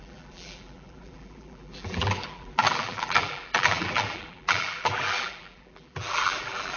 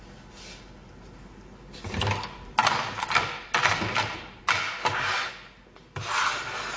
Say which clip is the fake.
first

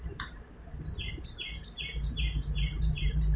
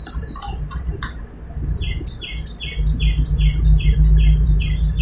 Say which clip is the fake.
first